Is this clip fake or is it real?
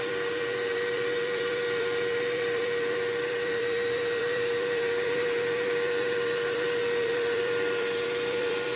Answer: fake